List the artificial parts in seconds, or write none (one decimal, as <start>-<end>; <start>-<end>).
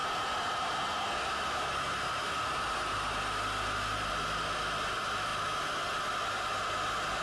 none